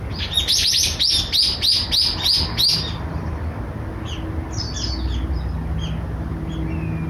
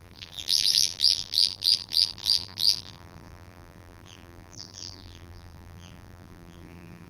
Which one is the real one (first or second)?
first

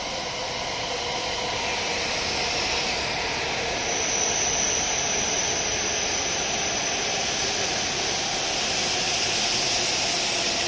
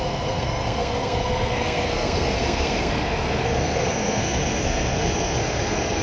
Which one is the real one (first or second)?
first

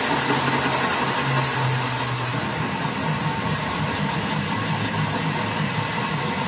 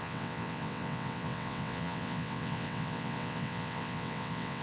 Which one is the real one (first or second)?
first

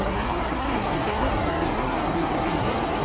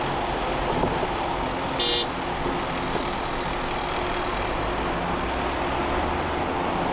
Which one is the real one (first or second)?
second